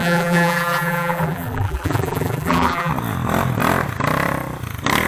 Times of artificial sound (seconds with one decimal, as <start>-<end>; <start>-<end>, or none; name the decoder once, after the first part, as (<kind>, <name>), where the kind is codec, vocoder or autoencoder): 0.0-2.9 (vocoder, BigVGAN v2)